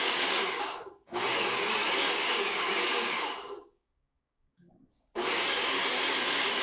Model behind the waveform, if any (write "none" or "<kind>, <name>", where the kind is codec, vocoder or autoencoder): codec, DAC